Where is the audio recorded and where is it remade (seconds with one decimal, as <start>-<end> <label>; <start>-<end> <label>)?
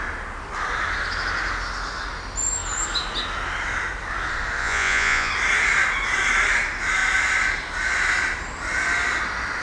0.0-4.6 recorded; 4.6-5.3 remade; 5.3-9.6 recorded